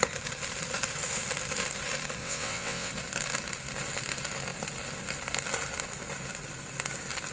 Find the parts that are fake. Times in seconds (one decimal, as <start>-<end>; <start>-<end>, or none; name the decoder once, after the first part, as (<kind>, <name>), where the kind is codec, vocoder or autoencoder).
2.2-2.9 (vocoder, WaveNeXt)